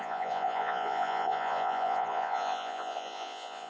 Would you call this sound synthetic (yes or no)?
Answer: yes